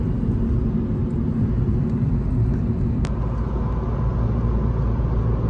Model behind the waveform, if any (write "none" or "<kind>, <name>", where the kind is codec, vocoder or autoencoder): none